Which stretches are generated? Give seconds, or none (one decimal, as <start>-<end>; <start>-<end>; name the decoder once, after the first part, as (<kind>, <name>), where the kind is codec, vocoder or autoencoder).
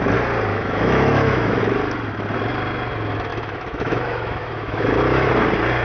0.5-1.6 (autoencoder, DAC-VAE); 3.3-5.3